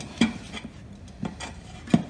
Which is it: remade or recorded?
recorded